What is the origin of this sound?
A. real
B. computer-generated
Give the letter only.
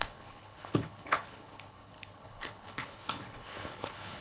B